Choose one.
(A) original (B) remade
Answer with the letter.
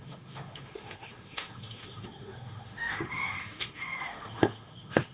B